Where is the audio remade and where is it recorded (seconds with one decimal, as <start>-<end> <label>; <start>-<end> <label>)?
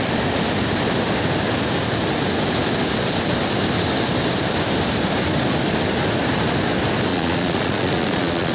0.0-7.1 recorded; 7.1-8.5 remade